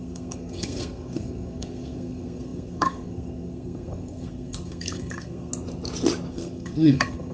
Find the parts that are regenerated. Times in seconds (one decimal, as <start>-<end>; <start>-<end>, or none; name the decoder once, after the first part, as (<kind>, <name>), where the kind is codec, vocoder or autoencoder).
0.0-5.5 (codec, SNAC); 6.3-7.3